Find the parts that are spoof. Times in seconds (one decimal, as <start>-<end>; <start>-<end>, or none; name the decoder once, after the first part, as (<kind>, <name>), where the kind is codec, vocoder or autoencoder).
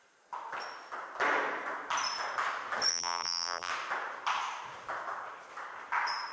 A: 2.9-3.7 (vocoder, BigVGAN v2)